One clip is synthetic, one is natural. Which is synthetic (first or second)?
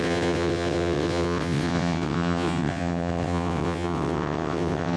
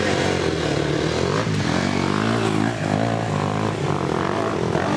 first